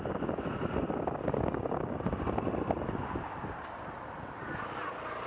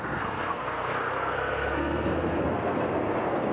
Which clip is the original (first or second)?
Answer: first